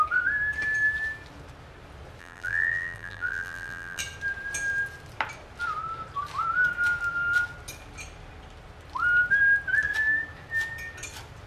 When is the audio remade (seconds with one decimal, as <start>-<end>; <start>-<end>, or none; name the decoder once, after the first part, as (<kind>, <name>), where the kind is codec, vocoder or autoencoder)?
2.2-4.0 (vocoder, BigVGAN v2)